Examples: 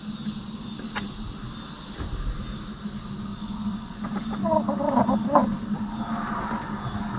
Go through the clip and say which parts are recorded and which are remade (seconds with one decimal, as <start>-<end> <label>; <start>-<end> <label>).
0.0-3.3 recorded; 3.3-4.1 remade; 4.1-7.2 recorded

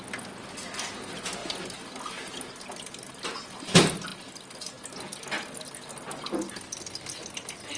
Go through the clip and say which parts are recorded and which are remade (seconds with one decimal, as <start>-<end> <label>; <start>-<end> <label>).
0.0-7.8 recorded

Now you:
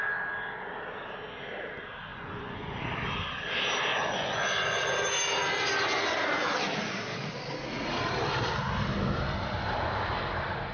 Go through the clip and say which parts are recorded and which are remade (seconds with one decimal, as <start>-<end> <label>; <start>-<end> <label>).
0.0-2.1 recorded; 2.1-2.8 remade; 2.8-3.9 recorded; 3.9-4.8 remade; 4.8-10.7 recorded

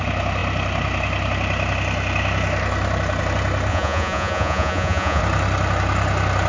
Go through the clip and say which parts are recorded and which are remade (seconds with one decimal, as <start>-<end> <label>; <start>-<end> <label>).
0.0-3.7 recorded; 3.7-5.2 remade; 5.2-6.5 recorded